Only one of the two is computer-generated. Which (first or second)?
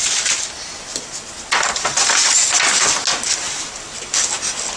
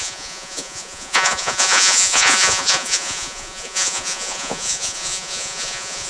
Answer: second